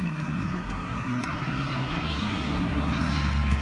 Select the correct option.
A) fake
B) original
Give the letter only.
A